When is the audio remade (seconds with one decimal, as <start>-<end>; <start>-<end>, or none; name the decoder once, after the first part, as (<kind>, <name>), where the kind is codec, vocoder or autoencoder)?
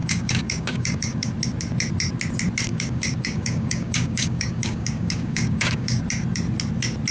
0.0-1.3 (codec, DAC); 2.7-6.0